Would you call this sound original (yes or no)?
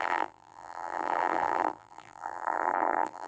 no